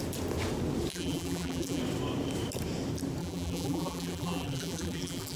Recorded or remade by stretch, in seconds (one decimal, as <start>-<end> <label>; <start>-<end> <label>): 0.0-0.9 recorded; 0.9-1.8 remade; 1.8-3.2 recorded; 3.2-5.4 remade